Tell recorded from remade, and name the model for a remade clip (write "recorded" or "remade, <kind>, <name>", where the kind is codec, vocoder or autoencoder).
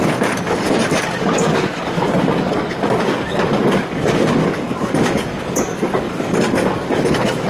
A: remade, codec, DAC